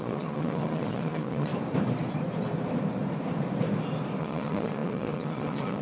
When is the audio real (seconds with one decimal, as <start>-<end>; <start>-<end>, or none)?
1.5-4.2